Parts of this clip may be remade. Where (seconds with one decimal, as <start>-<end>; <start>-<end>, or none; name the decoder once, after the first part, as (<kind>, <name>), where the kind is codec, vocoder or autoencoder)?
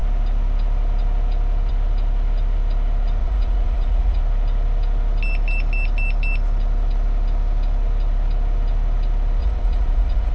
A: 3.2-4.2 (vocoder, Vocos); 9.4-10.3